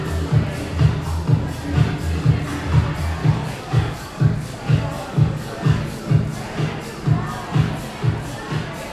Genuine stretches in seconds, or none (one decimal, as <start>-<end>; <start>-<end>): 0.0-3.2; 6.0-8.9